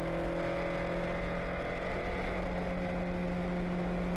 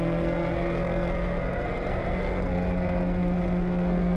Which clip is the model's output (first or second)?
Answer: second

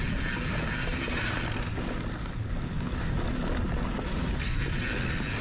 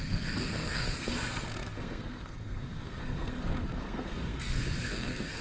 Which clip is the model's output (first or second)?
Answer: second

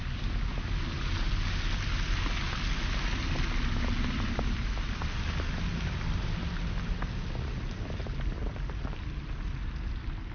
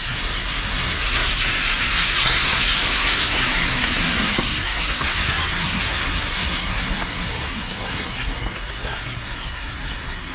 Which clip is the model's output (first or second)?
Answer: second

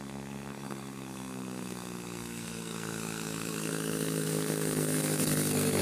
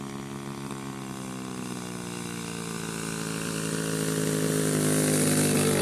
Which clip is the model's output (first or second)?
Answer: first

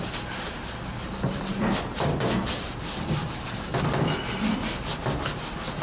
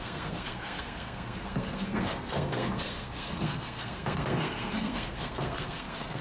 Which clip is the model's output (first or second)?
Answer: second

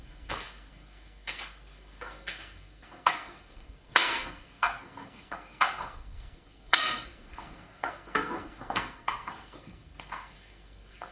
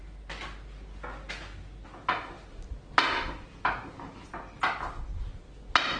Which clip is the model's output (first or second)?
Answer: first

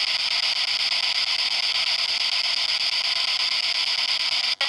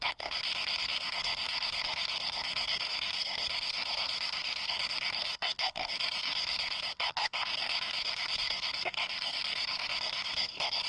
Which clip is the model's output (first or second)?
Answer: second